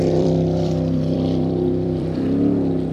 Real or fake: fake